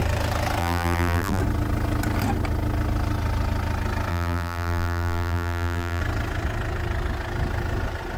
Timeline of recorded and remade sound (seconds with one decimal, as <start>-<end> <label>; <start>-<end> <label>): 0.0-0.6 recorded; 0.6-1.4 remade; 1.4-4.1 recorded; 4.1-6.0 remade; 6.0-8.2 recorded